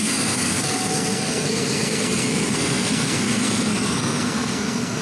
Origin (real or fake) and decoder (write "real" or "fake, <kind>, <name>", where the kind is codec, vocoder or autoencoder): fake, codec, SNAC